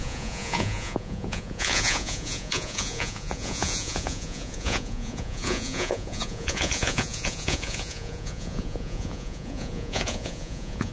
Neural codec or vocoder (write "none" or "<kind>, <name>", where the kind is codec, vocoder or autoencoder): vocoder, Vocos